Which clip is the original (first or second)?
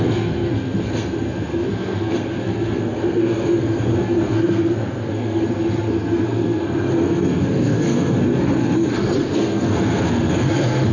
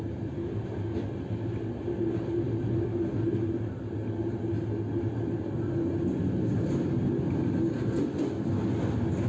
second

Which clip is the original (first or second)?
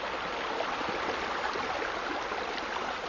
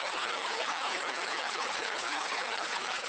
first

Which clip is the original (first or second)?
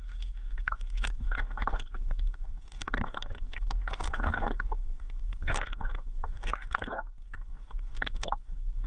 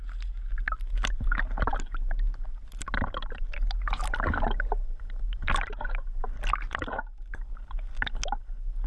second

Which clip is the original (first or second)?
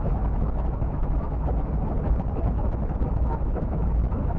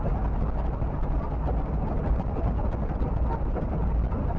second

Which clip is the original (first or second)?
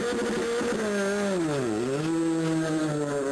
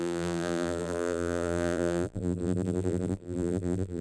first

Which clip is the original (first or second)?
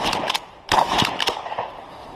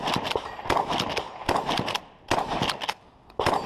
second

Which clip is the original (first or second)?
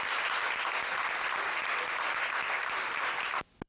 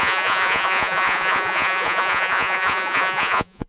first